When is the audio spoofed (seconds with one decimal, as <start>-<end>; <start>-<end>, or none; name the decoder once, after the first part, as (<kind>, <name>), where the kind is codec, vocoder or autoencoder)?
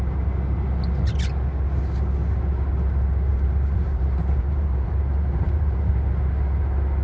3.3-5.9 (vocoder, BigVGAN v2)